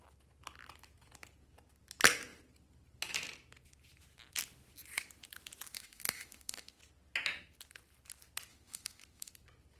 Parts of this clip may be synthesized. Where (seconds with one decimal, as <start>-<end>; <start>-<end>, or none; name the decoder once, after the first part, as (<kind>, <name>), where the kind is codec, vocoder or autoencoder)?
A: 5.7-6.8 (autoencoder, DAC-VAE); 8.5-9.3